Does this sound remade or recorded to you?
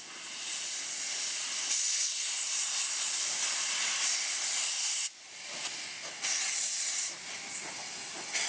recorded